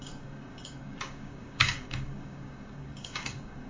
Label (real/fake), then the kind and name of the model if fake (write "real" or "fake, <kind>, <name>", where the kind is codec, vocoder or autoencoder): fake, codec, DAC